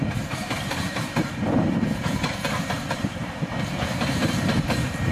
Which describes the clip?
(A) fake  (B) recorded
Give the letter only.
A